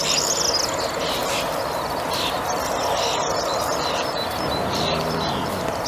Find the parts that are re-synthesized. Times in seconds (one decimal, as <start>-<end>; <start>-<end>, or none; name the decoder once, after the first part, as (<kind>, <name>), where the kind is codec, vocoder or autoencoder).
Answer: none